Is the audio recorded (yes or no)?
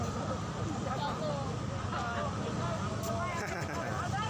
yes